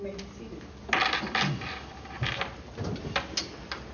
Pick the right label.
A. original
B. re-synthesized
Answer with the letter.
A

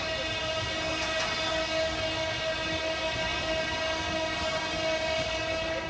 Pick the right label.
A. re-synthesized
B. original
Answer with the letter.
B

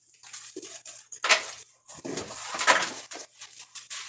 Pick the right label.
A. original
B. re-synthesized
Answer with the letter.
A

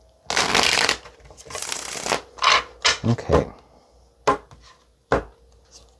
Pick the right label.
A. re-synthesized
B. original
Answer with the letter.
B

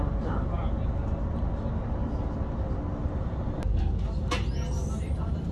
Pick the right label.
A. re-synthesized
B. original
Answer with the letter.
B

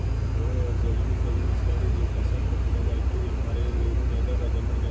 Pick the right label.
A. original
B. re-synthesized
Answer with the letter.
A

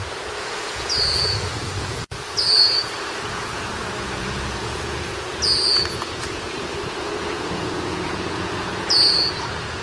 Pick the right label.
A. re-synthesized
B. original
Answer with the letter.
A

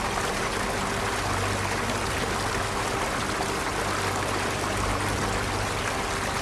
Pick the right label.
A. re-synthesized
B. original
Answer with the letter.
B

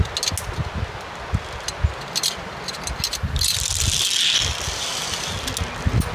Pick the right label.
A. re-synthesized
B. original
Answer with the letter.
B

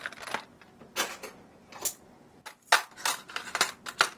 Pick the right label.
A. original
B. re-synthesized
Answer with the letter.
A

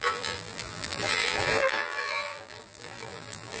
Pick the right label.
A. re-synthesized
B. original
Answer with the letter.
A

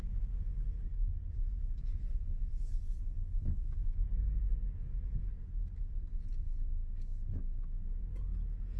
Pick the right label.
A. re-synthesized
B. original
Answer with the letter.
B